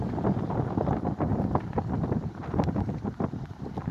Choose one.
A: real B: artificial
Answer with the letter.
A